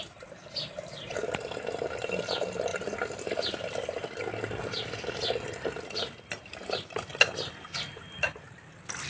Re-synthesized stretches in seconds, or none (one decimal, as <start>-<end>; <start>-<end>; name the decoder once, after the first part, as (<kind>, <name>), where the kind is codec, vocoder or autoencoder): none